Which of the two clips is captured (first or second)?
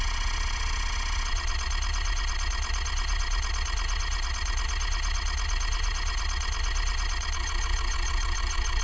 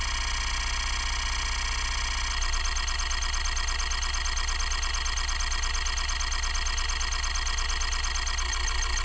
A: second